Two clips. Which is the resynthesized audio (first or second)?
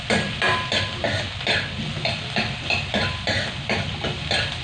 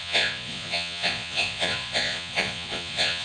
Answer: second